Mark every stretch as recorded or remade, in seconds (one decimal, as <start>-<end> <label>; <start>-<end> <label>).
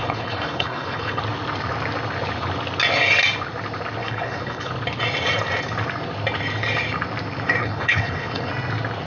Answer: 0.0-1.2 remade; 1.2-4.0 recorded; 4.0-4.7 remade; 4.7-7.6 recorded; 7.6-8.5 remade; 8.5-9.1 recorded